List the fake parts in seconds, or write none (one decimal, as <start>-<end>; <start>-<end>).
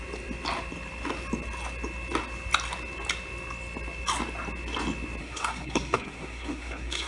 5.2-7.1